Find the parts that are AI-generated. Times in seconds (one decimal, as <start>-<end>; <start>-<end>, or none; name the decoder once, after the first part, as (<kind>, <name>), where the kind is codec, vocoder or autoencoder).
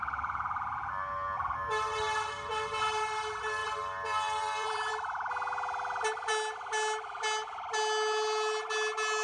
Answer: 3.6-4.9 (vocoder, BigVGAN v2)